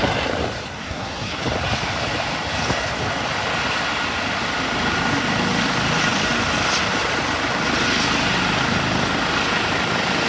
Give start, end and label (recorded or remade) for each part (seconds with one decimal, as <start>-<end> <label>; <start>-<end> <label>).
0.0-0.8 recorded; 0.8-1.4 remade; 1.4-10.3 recorded